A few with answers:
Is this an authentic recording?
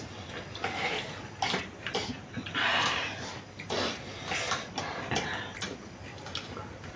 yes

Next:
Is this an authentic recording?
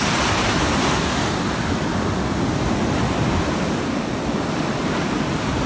yes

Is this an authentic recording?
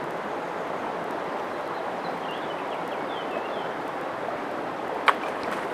yes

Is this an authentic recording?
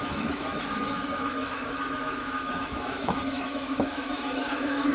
no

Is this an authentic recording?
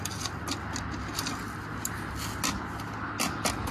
yes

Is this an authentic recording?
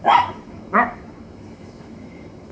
no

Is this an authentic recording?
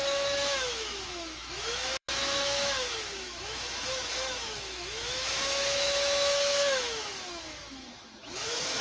no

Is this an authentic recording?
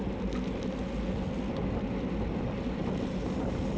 yes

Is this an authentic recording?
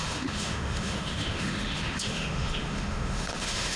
no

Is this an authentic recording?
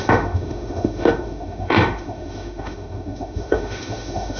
no